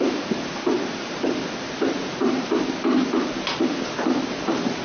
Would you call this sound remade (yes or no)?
yes